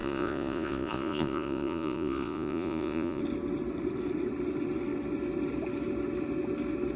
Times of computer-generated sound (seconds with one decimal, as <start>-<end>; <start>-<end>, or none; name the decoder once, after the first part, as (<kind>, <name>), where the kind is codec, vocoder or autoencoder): 0.0-3.2 (vocoder, Vocos)